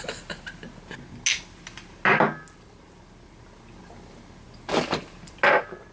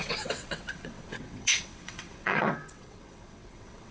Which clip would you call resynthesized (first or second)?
second